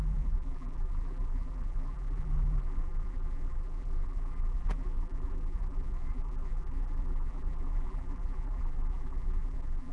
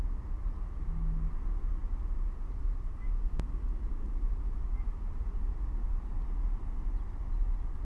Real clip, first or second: second